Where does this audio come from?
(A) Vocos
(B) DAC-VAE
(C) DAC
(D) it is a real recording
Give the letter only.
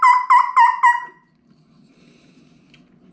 D